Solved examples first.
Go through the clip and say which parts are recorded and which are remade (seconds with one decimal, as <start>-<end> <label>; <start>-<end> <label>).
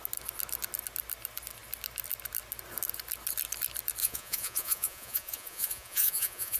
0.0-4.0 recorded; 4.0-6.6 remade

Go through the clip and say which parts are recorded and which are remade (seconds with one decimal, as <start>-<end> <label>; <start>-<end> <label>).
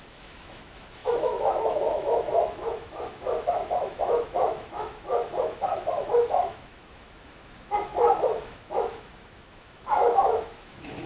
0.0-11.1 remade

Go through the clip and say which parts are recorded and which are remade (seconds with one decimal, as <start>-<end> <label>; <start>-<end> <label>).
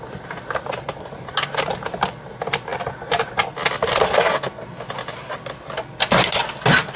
0.0-7.0 recorded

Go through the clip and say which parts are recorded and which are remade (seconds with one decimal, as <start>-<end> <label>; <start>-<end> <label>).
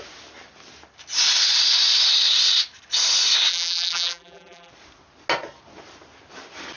0.0-3.5 recorded; 3.5-4.7 remade; 4.7-6.8 recorded